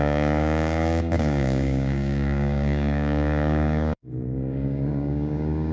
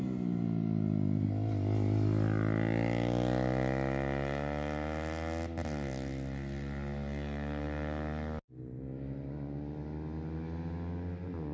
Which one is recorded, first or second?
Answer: second